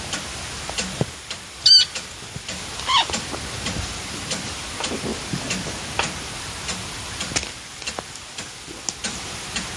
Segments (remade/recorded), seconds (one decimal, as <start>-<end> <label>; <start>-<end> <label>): 0.0-9.8 recorded